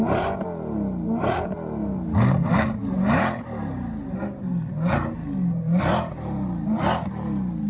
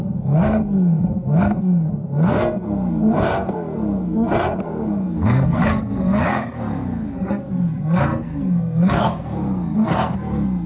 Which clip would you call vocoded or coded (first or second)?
second